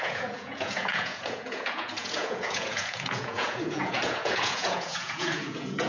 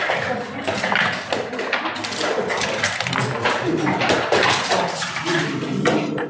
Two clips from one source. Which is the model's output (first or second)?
first